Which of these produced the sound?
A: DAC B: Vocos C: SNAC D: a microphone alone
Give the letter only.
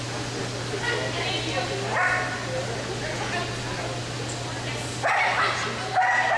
D